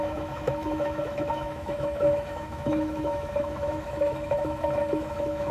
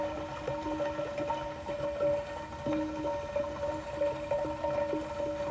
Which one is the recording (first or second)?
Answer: second